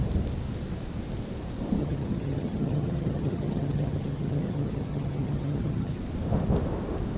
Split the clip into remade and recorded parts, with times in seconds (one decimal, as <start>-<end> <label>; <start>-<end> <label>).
0.0-1.8 recorded; 1.8-6.0 remade; 6.0-7.2 recorded